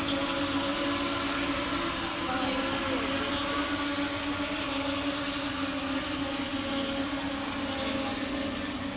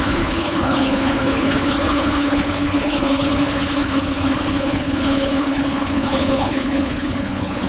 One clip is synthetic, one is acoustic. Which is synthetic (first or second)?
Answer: second